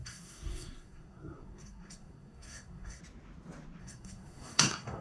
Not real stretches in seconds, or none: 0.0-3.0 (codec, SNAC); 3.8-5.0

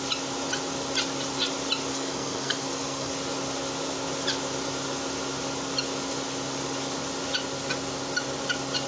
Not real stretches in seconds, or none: 1.9-3.1 (codec, SNAC)

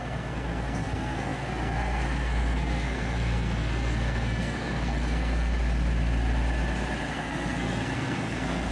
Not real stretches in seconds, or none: 0.0-5.5 (codec, SNAC); 7.1-8.7

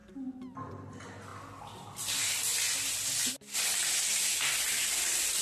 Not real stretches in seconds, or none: none

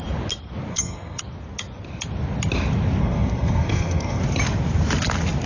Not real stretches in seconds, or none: 0.7-1.2 (codec, SNAC); 3.0-4.2

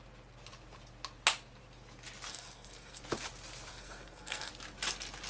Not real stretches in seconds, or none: 2.3-3.0 (codec, SNAC); 3.7-4.5

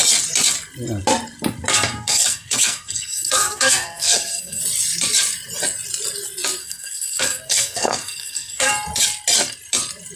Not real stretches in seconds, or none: 1.7-4.6 (codec, SNAC); 6.6-8.7

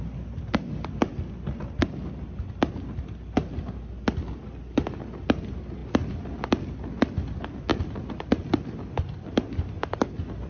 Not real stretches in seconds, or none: none